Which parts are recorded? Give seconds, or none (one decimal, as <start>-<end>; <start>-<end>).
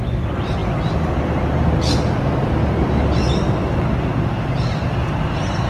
0.0-5.7